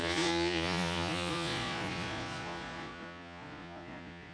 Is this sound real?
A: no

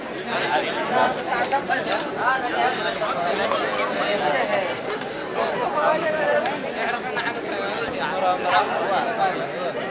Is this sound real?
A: yes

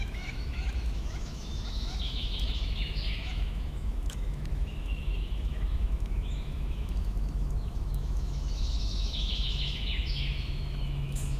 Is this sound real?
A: no